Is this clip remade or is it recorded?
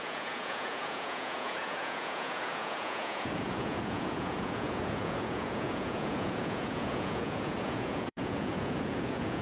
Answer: remade